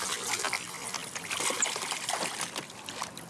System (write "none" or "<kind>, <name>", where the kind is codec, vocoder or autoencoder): none